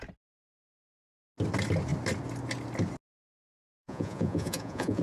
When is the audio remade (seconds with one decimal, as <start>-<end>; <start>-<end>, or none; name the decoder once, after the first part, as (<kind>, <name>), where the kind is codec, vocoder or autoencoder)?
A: 3.6-5.0 (vocoder, Vocos)